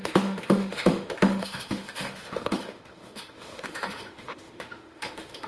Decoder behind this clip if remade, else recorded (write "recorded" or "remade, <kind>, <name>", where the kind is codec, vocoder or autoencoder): remade, autoencoder, DAC-VAE